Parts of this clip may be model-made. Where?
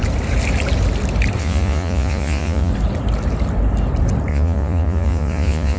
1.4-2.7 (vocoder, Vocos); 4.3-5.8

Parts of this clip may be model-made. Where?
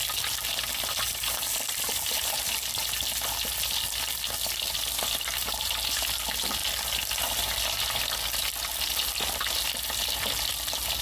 none